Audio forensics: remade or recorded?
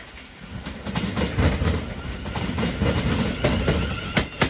recorded